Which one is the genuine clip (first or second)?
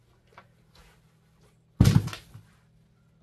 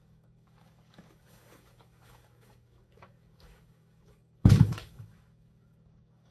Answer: first